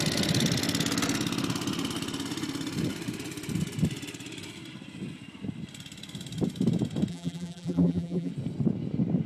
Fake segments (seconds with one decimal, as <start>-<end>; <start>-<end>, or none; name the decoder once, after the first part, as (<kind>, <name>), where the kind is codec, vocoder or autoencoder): 7.1-8.3 (vocoder, BigVGAN v2)